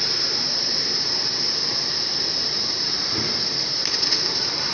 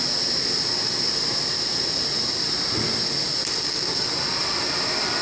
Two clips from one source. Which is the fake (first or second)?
first